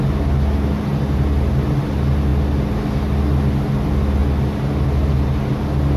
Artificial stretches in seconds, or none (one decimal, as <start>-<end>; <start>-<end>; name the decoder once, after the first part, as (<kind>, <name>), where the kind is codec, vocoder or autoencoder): none